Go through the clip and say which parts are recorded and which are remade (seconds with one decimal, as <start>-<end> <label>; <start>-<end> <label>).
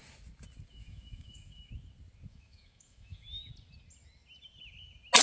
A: 0.0-0.7 recorded; 0.7-1.7 remade; 1.7-2.3 recorded; 2.3-3.5 remade; 3.5-5.2 recorded